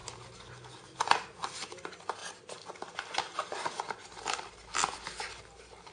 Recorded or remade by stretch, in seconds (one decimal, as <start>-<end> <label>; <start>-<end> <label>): 0.0-5.9 recorded